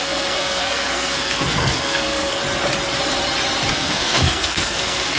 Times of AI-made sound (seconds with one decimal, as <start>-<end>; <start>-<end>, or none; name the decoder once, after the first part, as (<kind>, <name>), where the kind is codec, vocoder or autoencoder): 0.0-2.4 (codec, SNAC); 3.7-5.2